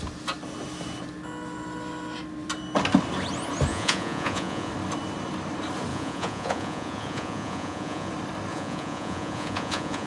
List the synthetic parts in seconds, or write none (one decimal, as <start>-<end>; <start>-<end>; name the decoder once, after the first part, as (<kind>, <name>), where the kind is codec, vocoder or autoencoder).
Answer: 3.7-4.7 (vocoder, Vocos); 5.9-8.1; 8.5-10.1